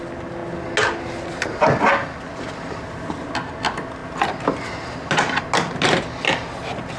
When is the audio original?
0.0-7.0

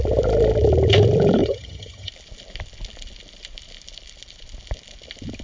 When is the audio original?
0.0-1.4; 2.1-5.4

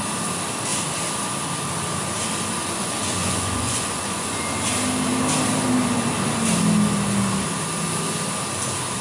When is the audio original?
0.0-2.6; 4.4-9.0

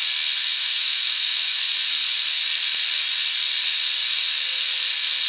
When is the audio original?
0.0-0.4; 1.6-5.3

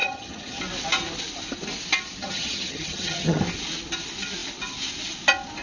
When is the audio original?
0.6-2.2; 3.4-5.6

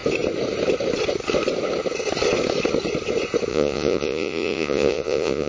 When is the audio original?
0.0-3.5